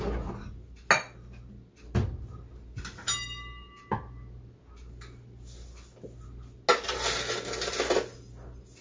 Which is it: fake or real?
real